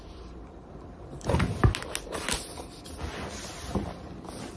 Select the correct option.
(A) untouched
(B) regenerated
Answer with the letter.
A